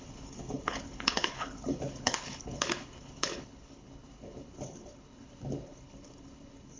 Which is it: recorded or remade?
remade